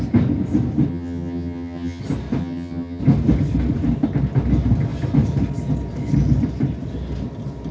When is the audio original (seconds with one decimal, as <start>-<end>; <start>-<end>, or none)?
0.0-0.9; 2.0-2.4; 3.0-7.7